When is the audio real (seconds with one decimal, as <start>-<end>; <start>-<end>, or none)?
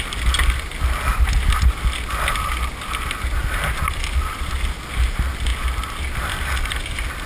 0.0-7.3